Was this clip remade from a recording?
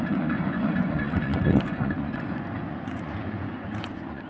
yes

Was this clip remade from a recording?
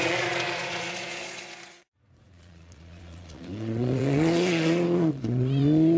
yes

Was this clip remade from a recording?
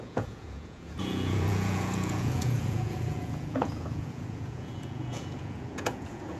yes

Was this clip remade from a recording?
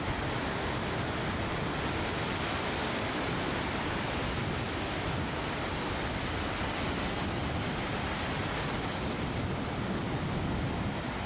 no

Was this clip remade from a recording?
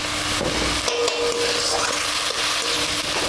no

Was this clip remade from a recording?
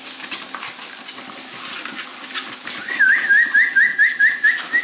no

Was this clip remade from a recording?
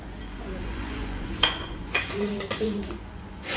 yes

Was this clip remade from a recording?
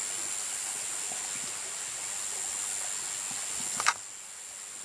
no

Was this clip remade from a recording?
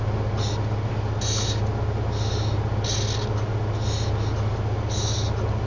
no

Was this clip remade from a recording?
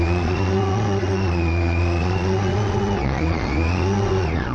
yes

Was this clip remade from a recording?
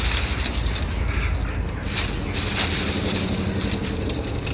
no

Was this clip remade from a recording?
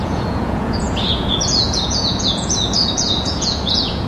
yes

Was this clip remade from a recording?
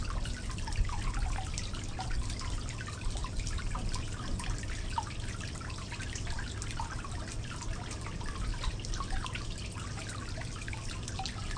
no